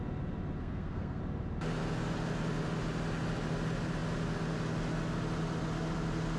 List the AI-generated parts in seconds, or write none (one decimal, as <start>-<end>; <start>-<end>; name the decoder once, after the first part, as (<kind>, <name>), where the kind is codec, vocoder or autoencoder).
0.6-1.2 (codec, SNAC)